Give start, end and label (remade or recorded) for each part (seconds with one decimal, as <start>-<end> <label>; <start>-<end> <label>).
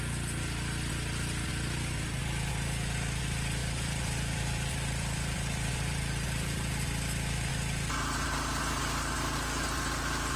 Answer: 0.0-1.5 recorded; 1.5-2.5 remade; 2.5-3.6 recorded; 3.6-6.7 remade; 6.7-10.4 recorded